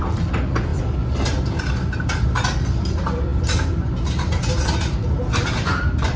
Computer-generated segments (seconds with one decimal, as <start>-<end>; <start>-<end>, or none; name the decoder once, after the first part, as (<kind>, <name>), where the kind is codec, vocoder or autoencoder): none